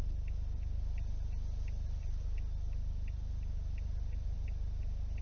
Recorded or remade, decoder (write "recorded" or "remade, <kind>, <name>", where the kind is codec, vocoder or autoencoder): recorded